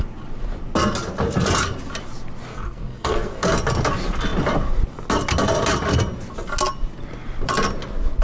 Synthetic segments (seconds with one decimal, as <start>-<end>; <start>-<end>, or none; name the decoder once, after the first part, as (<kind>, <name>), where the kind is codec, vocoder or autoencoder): 2.5-3.5 (codec, SNAC)